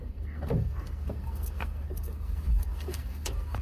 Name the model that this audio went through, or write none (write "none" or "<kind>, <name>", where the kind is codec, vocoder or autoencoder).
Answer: codec, SNAC